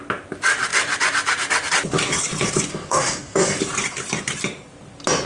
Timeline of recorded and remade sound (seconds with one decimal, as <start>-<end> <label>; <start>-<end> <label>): 0.0-2.7 recorded; 2.7-3.6 remade; 3.6-5.3 recorded